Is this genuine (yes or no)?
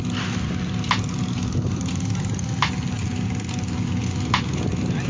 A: yes